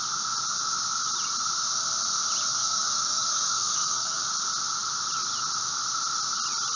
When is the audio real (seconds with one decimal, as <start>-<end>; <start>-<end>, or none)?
0.0-2.5; 4.2-6.8